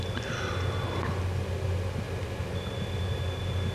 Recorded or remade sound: recorded